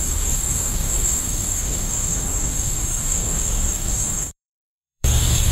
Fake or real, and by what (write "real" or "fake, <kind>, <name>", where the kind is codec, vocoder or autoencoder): fake, codec, DAC